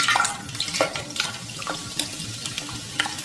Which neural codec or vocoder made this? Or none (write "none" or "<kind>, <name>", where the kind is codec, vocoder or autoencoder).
vocoder, BigVGAN v2